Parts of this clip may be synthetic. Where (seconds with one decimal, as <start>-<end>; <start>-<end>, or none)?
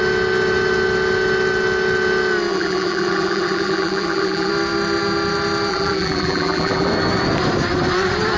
2.5-4.5; 5.7-6.9